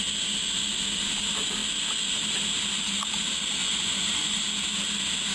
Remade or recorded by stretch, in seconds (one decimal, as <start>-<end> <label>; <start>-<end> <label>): 0.0-3.6 recorded; 3.6-4.4 remade; 4.4-5.3 recorded